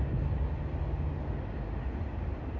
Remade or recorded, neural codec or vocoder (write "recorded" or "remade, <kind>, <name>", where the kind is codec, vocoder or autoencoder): recorded